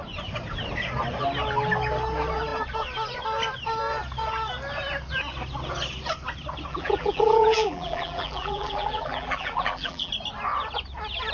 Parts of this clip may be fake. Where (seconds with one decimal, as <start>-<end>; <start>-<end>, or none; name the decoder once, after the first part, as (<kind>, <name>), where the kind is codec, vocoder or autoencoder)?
6.7-10.1 (vocoder, BigVGAN v2)